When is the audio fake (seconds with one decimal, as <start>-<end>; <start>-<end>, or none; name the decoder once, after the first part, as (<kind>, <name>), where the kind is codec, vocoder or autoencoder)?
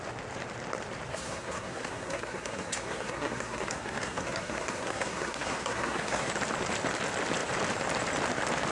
1.1-6.3 (codec, SNAC)